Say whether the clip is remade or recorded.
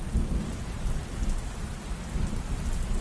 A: recorded